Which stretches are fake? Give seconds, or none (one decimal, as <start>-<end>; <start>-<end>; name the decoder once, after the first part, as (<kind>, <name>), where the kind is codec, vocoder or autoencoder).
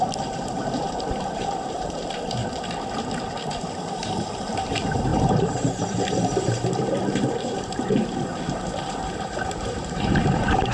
0.0-2.4 (vocoder, BigVGAN v2); 3.9-10.7